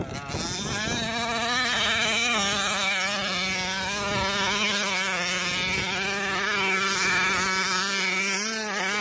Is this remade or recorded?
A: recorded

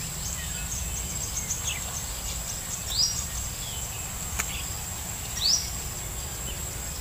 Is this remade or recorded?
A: recorded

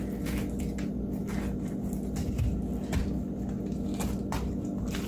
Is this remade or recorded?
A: recorded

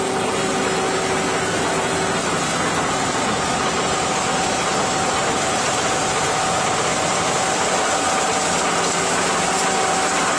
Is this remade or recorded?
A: recorded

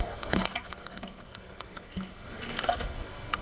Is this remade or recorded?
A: remade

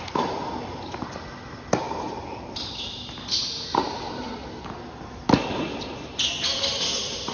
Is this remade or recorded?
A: recorded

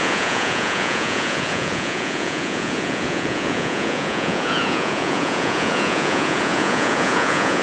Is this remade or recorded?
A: remade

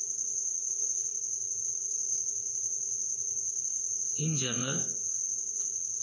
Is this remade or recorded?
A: remade